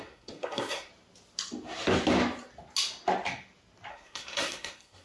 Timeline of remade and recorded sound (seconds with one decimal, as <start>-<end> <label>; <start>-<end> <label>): 0.0-0.9 remade; 0.9-3.9 recorded; 3.9-5.0 remade